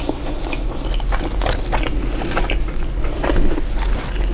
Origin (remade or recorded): recorded